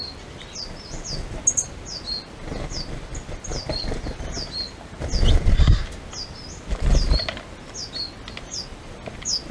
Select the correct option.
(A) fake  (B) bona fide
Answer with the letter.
B